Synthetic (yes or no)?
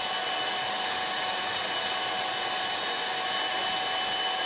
no